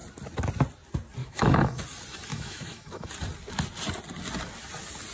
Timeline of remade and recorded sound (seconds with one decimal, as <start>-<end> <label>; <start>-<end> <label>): 0.0-1.2 recorded; 1.2-1.8 remade; 1.8-2.3 recorded; 2.3-3.1 remade; 3.1-5.1 recorded